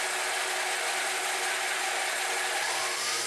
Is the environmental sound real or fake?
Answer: real